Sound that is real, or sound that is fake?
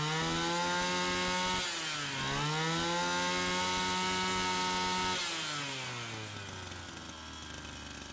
real